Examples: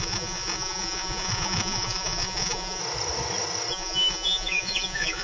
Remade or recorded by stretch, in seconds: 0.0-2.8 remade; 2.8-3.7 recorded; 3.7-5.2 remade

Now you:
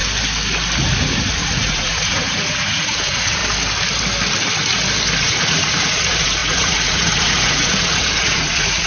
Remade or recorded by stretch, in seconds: 0.0-1.0 recorded; 1.0-3.4 remade; 3.4-5.2 recorded; 5.2-8.9 remade

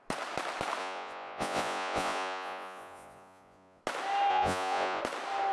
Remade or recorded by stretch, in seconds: 0.0-0.8 recorded; 0.8-3.8 remade; 3.8-4.3 recorded; 4.3-5.0 remade; 5.0-5.5 recorded

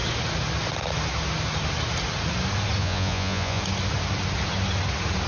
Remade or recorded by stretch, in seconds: 0.0-2.8 recorded; 2.8-3.6 remade; 3.6-5.3 recorded